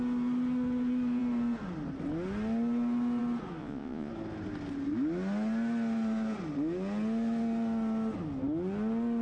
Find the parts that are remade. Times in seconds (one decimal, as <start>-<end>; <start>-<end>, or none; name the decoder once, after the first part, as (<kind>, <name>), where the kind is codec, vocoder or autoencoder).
3.6-4.1 (vocoder, Vocos)